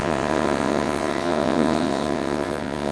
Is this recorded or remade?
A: remade